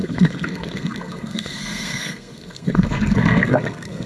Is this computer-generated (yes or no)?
yes